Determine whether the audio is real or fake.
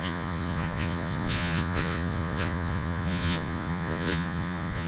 fake